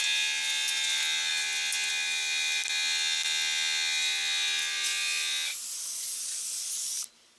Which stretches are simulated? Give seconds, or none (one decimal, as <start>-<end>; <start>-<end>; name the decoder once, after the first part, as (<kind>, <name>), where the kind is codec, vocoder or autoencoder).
none